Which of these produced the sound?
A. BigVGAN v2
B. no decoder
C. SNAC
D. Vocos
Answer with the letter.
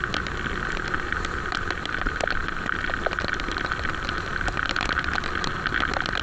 B